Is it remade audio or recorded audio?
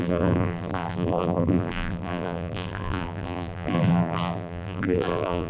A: remade